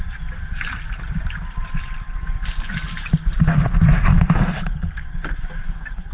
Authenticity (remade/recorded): recorded